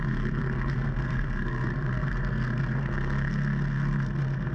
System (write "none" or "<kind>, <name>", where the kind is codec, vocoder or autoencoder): codec, SNAC